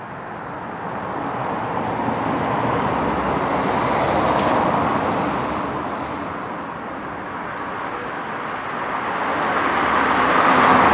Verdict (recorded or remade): recorded